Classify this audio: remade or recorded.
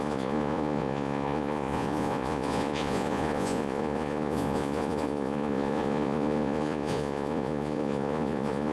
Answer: remade